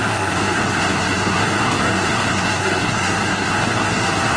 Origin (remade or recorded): remade